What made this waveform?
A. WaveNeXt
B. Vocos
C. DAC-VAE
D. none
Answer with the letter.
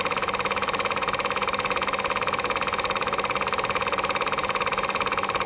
C